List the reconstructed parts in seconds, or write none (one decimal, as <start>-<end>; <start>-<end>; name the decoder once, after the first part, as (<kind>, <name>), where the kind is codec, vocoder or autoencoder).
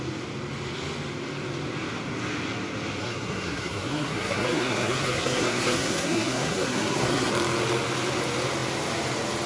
3.0-7.3 (codec, SNAC)